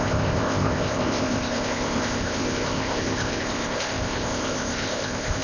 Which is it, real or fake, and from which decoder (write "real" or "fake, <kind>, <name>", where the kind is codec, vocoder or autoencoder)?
fake, codec, ZipCodec